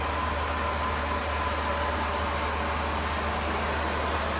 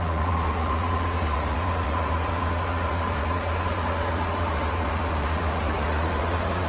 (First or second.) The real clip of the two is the first